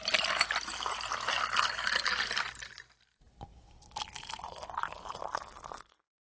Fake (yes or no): no